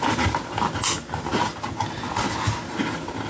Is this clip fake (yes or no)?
no